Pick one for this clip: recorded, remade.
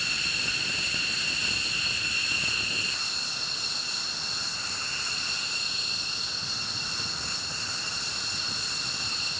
recorded